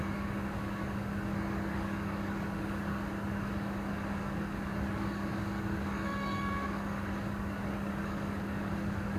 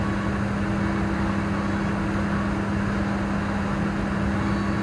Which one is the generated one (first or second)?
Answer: first